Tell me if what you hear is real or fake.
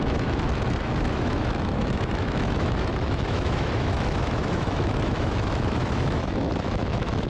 fake